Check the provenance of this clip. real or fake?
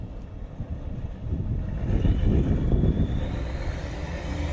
real